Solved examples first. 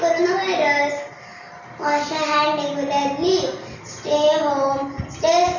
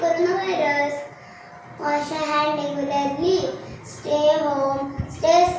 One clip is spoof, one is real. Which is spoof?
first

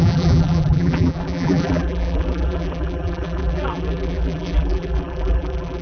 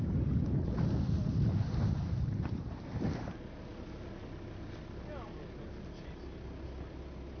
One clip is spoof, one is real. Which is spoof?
first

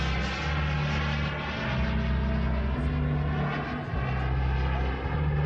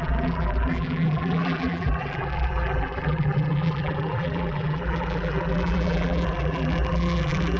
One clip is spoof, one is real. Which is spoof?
second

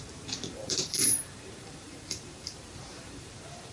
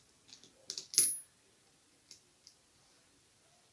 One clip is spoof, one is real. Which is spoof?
first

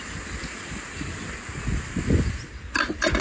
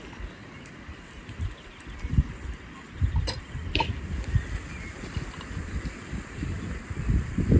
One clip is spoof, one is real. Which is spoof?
second